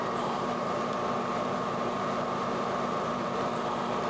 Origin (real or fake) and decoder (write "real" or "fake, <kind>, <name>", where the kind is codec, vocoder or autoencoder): fake, vocoder, BigVGAN v2